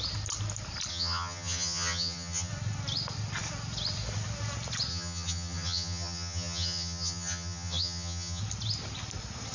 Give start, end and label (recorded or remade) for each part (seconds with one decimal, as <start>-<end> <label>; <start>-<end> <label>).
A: 0.0-0.9 recorded; 0.9-2.5 remade; 2.5-4.9 recorded; 4.9-8.4 remade; 8.4-9.5 recorded